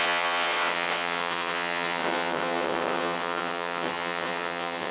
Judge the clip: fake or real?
fake